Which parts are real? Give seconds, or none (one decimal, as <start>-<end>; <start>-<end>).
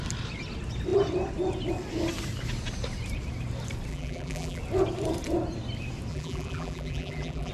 0.0-3.9; 4.6-6.1